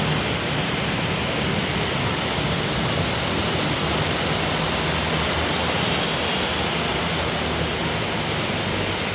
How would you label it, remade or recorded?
recorded